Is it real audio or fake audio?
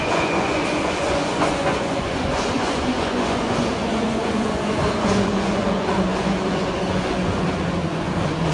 fake